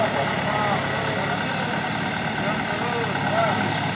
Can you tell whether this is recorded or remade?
recorded